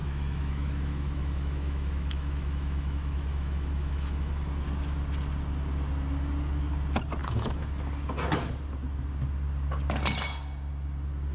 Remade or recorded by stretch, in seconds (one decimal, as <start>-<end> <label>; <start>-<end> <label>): 0.0-4.3 remade; 4.3-7.2 recorded; 7.2-7.8 remade; 7.8-11.3 recorded